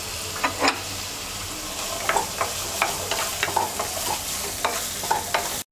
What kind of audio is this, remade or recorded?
recorded